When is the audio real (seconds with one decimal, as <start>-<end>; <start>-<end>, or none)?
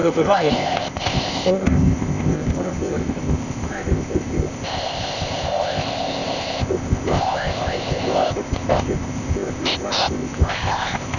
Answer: none